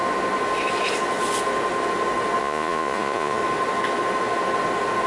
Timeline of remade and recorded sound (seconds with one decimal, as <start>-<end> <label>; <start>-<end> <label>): 0.0-2.4 recorded; 2.4-3.4 remade; 3.4-5.1 recorded